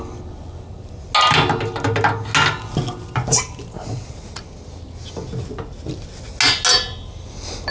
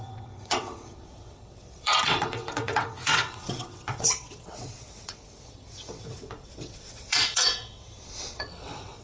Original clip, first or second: first